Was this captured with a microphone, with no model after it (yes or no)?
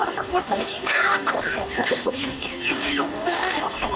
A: no